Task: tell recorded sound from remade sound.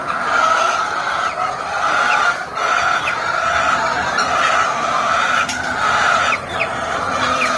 remade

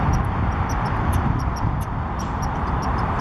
remade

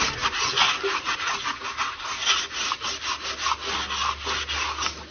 recorded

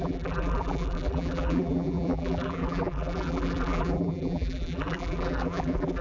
remade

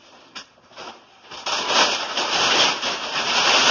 remade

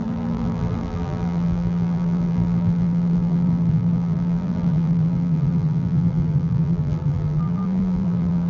remade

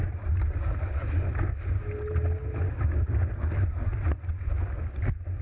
recorded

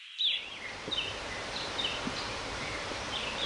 remade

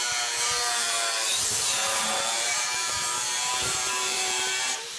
remade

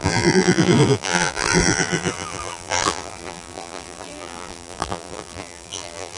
remade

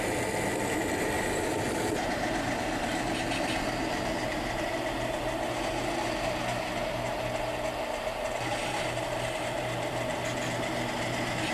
recorded